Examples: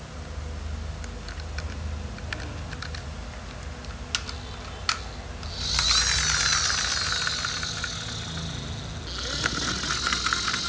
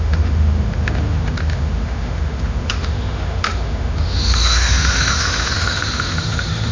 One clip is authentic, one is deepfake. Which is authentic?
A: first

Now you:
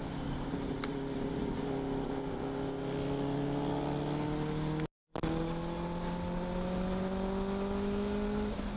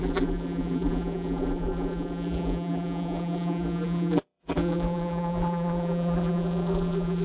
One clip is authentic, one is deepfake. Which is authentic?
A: first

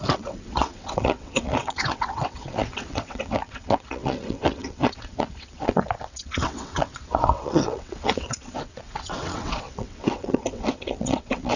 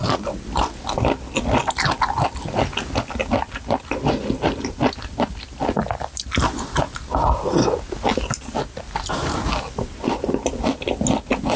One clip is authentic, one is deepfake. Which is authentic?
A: second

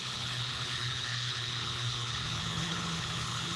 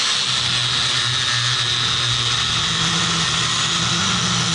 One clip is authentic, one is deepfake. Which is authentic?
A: second